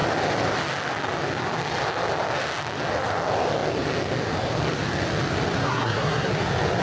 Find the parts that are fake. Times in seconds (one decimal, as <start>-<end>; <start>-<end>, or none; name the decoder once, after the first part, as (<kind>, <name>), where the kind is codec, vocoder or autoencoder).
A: 5.6-6.3 (codec, SNAC)